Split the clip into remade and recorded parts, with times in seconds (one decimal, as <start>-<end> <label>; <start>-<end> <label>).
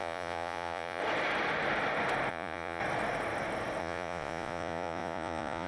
0.0-1.0 remade; 1.0-2.3 recorded; 2.3-2.8 remade; 2.8-3.8 recorded; 3.8-5.7 remade